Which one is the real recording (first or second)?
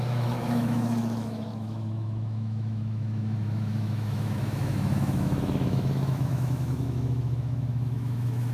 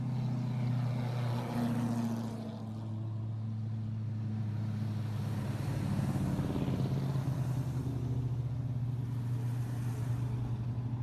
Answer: second